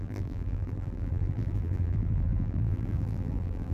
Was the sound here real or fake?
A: fake